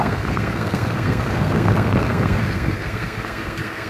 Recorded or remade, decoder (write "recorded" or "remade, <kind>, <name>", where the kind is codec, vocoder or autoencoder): remade, codec, SNAC